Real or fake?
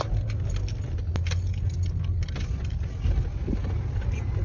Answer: real